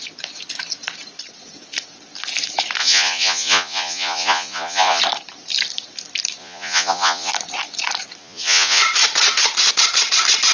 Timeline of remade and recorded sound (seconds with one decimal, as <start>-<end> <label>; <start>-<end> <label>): 0.0-2.8 recorded; 2.8-5.0 remade; 5.0-6.4 recorded; 6.4-7.3 remade; 7.3-8.2 recorded; 8.2-8.8 remade; 8.8-10.5 recorded